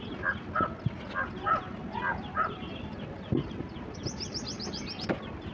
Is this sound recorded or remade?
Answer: recorded